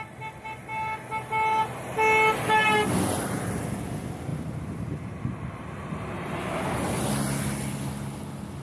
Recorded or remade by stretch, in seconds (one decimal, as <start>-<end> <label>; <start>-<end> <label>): 0.0-8.6 recorded